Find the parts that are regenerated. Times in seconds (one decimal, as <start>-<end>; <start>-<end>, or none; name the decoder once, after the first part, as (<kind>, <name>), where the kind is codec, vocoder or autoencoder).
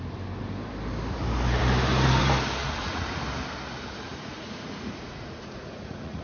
2.6-3.2 (vocoder, Vocos); 4.1-6.2